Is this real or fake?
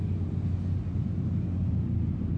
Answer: real